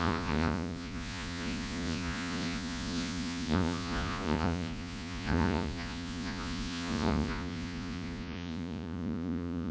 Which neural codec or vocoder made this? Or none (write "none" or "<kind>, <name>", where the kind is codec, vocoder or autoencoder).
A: vocoder, Vocos